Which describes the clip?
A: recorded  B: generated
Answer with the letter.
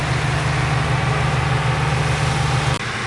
A